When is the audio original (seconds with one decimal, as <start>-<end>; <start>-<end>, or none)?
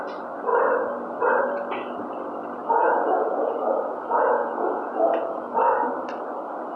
0.0-2.6; 5.6-6.8